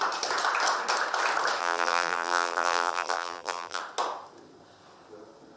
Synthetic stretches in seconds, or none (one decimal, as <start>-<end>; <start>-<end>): 1.6-3.8